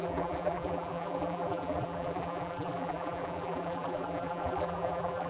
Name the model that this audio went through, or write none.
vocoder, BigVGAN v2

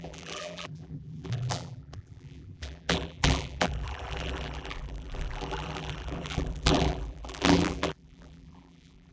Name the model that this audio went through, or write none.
vocoder, BigVGAN v2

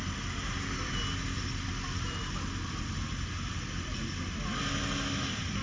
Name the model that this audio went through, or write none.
none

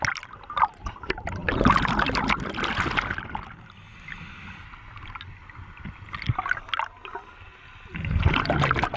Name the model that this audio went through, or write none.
none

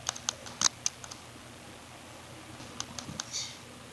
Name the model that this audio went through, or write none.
none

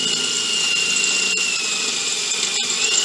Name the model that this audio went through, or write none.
none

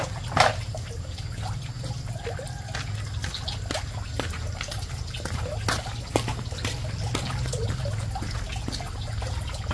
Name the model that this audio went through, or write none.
none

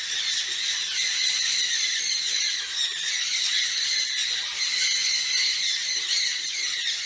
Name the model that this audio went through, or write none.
none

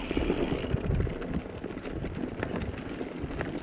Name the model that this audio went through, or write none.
none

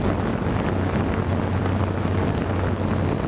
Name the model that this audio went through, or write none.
none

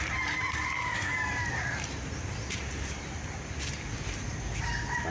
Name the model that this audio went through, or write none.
vocoder, BigVGAN v2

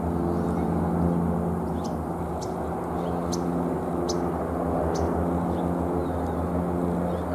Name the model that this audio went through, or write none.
none